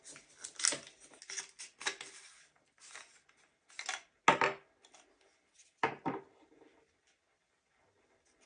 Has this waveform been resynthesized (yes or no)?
no